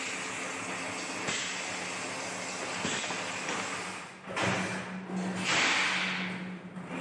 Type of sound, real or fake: real